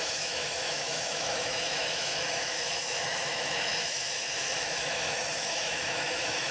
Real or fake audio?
fake